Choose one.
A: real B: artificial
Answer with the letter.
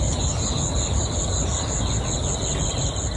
A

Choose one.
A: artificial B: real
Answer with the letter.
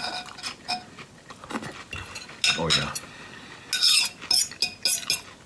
B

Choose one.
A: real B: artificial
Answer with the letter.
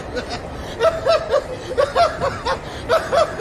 A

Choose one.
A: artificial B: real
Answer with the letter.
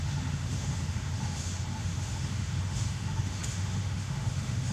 A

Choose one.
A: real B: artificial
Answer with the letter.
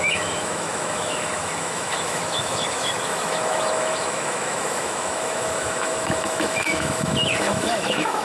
B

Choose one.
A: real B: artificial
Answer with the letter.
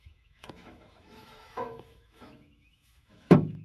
B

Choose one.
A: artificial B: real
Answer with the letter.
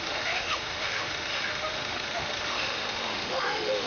A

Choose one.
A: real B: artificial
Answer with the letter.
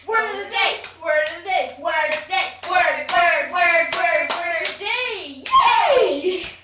A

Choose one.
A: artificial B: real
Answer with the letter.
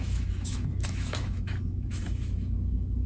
A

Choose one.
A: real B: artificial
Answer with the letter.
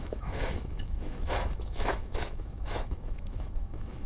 B